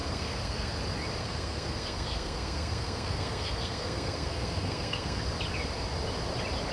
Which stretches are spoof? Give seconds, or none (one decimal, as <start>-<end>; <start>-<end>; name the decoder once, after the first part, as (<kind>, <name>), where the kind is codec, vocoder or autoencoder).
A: 0.0-0.7 (codec, SNAC); 1.2-5.2